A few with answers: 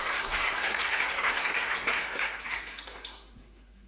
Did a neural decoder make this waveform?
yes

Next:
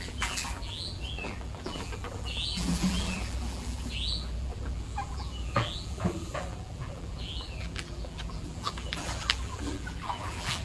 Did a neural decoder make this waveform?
yes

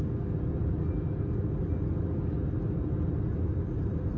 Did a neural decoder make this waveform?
no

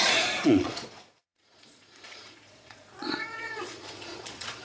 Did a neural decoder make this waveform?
yes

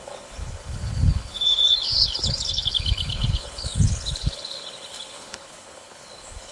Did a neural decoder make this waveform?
yes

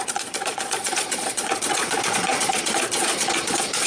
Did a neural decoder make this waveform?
yes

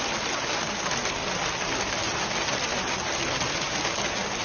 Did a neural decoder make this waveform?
no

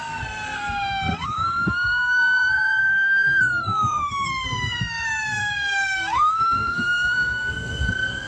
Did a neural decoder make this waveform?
yes